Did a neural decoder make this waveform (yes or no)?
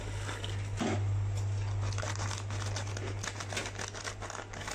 no